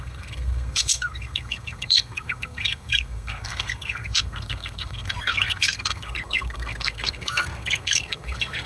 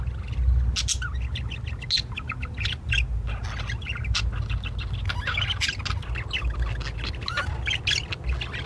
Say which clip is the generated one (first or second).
first